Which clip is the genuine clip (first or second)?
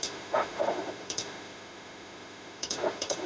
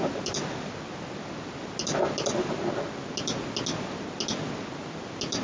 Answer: second